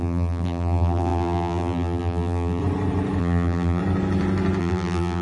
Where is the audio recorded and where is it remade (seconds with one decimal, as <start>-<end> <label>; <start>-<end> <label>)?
0.0-2.6 remade; 2.6-3.2 recorded; 3.2-3.8 remade; 3.8-4.6 recorded; 4.6-5.2 remade

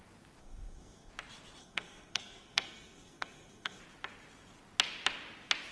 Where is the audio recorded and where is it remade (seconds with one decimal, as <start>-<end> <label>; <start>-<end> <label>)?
0.0-0.4 recorded; 0.4-1.1 remade; 1.1-1.6 recorded; 1.6-3.8 remade; 3.8-5.7 recorded

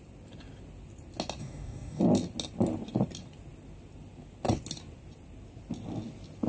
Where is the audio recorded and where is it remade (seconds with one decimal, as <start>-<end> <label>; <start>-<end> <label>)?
0.0-1.4 recorded; 1.4-2.0 remade; 2.0-6.5 recorded

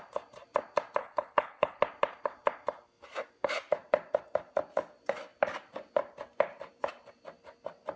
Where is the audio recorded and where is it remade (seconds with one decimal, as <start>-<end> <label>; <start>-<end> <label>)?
0.0-1.0 recorded; 1.0-1.8 remade; 1.8-8.0 recorded

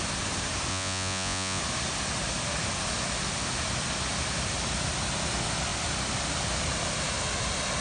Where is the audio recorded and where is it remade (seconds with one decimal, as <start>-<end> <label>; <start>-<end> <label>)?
0.0-0.7 recorded; 0.7-1.6 remade; 1.6-7.8 recorded

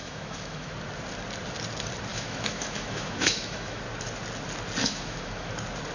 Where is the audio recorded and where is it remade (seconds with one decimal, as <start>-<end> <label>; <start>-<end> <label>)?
0.0-0.7 remade; 0.7-2.1 recorded; 2.1-3.8 remade; 3.8-4.8 recorded; 4.8-5.5 remade; 5.5-5.9 recorded

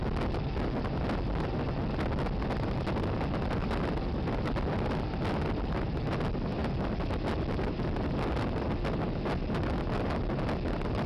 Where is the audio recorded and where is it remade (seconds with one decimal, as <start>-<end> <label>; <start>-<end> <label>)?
0.0-11.1 recorded

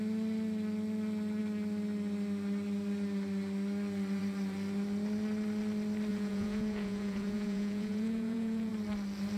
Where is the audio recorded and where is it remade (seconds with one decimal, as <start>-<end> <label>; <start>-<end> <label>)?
0.0-6.1 recorded; 6.1-8.7 remade; 8.7-9.4 recorded